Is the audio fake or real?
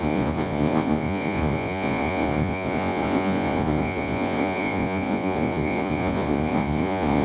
fake